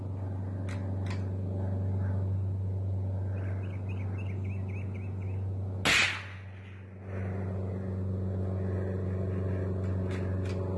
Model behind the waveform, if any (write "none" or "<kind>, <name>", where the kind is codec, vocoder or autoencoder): none